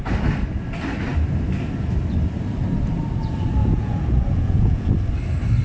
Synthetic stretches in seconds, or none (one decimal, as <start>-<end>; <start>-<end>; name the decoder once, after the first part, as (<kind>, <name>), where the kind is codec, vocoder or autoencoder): 3.6-4.9 (vocoder, Vocos)